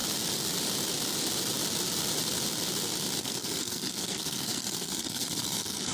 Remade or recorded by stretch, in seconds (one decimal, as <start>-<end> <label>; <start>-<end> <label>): 0.0-3.2 recorded; 3.2-5.9 remade